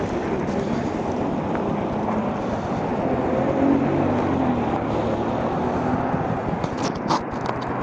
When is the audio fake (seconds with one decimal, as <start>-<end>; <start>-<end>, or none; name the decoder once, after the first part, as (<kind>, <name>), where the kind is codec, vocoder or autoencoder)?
none